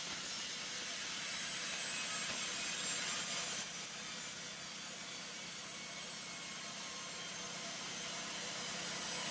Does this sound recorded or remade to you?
recorded